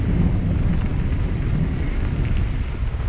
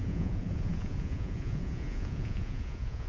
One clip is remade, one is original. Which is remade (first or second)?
second